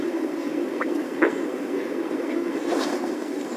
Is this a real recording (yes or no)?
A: no